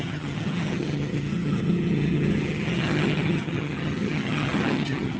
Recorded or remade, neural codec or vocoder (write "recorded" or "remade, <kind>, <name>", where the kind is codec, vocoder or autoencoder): remade, vocoder, HiFi-GAN